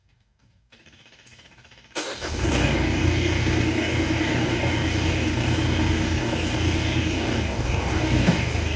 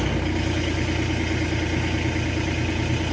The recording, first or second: second